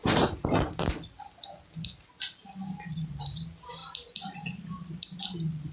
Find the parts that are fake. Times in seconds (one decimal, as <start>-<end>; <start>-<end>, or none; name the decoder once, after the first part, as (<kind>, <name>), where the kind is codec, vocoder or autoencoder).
3.8-5.2 (vocoder, BigVGAN v2)